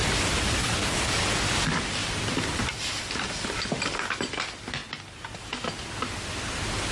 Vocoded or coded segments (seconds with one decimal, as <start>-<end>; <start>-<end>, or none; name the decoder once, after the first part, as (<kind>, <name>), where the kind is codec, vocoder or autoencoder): 0.6-1.2 (codec, DAC)